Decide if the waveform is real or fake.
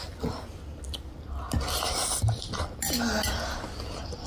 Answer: real